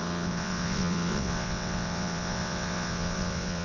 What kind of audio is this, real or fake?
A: fake